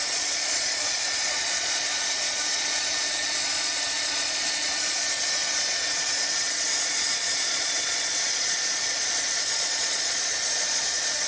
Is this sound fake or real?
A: fake